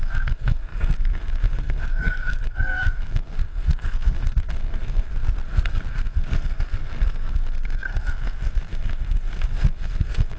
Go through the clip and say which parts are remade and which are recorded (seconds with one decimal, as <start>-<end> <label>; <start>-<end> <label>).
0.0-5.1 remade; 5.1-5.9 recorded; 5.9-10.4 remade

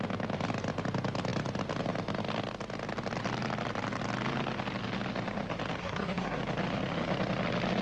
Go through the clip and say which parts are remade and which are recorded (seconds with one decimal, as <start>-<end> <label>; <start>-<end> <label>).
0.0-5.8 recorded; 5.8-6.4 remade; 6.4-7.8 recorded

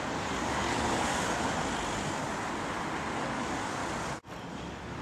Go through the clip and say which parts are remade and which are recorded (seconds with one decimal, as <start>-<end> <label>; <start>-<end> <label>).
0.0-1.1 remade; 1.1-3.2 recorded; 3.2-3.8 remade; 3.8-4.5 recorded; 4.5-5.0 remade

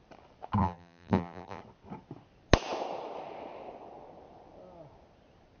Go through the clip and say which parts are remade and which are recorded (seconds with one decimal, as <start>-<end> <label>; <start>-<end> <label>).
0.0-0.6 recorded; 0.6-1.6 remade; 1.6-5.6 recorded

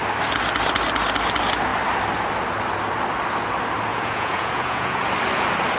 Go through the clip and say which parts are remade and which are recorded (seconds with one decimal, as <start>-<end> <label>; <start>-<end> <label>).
0.0-3.9 recorded; 3.9-5.0 remade; 5.0-5.8 recorded

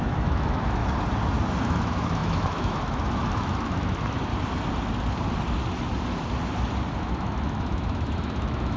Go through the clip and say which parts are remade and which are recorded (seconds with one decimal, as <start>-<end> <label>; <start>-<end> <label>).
0.0-0.8 remade; 0.8-1.6 recorded; 1.6-4.3 remade; 4.3-7.0 recorded; 7.0-8.8 remade